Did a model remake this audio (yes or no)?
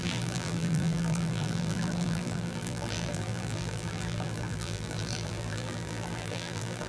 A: yes